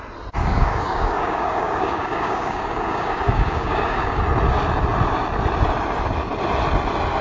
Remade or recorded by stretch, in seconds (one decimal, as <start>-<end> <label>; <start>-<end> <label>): 0.0-0.4 recorded; 0.4-4.2 remade; 4.2-7.2 recorded